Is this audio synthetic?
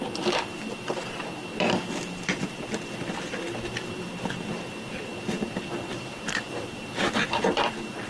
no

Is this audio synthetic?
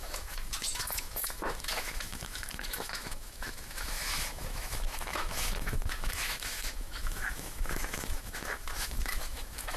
yes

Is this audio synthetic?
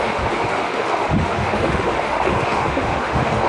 yes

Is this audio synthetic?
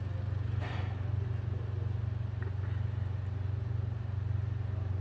no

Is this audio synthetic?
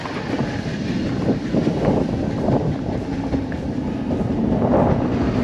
no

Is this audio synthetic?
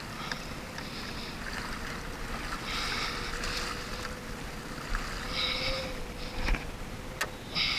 no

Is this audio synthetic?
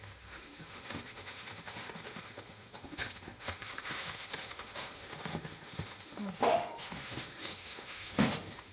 yes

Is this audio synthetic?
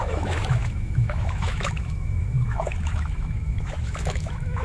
yes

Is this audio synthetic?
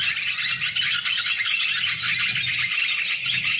no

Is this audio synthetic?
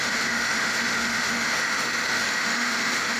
yes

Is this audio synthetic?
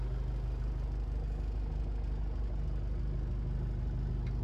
no